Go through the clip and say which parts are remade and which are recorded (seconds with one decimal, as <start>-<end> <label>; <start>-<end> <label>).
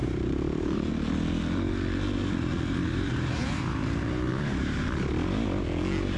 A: 0.0-0.9 remade; 0.9-2.8 recorded; 2.8-4.8 remade; 4.8-6.2 recorded